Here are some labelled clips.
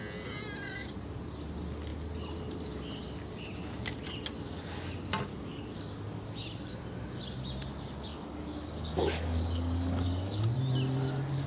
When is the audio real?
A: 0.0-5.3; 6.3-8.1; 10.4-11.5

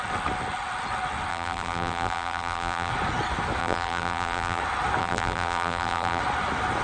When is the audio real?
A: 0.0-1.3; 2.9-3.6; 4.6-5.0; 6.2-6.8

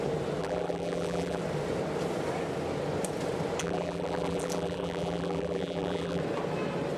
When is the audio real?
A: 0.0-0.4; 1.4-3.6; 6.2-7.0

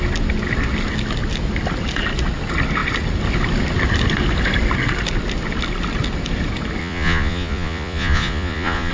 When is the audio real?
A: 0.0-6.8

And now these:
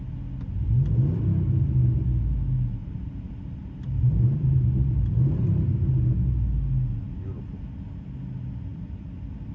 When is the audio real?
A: 0.0-2.8; 6.0-9.5